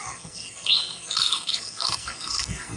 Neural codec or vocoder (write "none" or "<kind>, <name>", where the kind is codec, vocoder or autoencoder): codec, SNAC